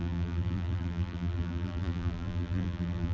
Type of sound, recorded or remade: remade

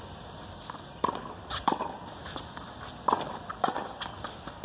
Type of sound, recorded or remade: remade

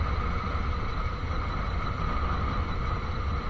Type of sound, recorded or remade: recorded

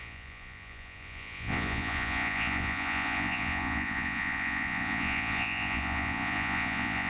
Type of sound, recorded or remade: remade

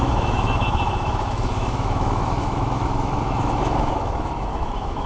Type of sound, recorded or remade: remade